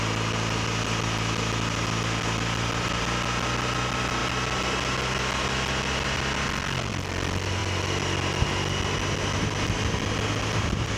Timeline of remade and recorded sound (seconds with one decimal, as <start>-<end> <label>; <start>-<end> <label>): 0.0-11.0 recorded